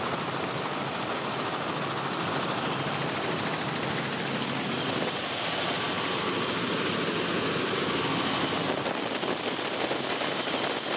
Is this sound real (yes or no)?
yes